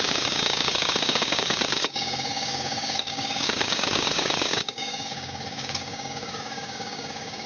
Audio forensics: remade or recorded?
remade